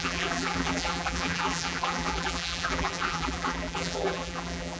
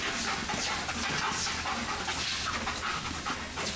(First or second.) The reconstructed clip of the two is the first